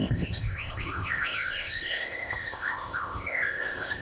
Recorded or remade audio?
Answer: remade